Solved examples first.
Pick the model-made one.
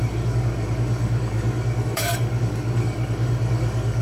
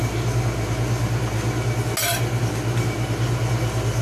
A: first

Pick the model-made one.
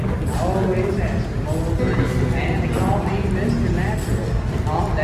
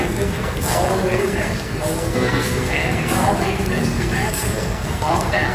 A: second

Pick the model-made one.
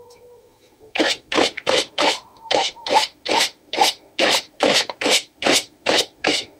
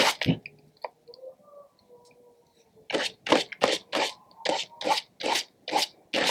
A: first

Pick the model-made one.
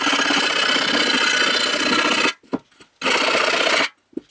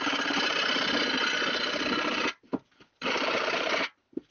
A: second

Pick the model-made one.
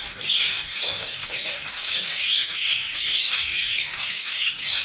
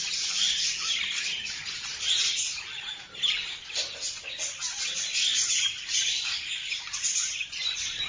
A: first